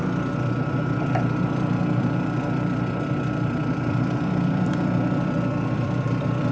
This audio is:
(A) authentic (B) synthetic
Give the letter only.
B